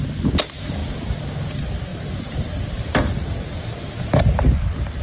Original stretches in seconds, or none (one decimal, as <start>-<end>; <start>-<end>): 0.0-5.0